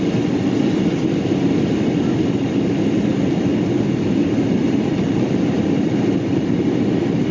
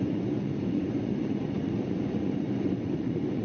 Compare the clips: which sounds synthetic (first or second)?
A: second